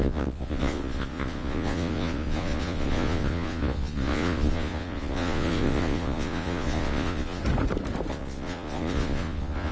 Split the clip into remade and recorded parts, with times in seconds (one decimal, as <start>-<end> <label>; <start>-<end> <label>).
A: 0.0-7.4 remade; 7.4-8.1 recorded; 8.1-9.7 remade

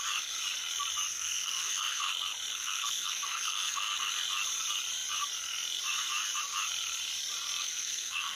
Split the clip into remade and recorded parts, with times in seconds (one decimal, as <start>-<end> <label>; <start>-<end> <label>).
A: 0.0-1.1 recorded; 1.1-2.1 remade; 2.1-2.5 recorded; 2.5-4.1 remade; 4.1-7.6 recorded; 7.6-8.4 remade